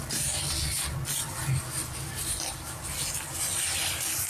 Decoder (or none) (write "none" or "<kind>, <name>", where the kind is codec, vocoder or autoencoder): none